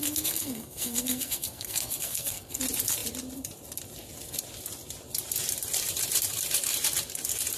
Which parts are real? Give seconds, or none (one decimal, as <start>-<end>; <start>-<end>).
2.6-7.6